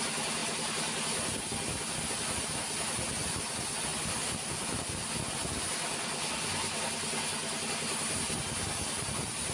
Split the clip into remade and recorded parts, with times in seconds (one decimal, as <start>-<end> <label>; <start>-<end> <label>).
0.0-9.5 recorded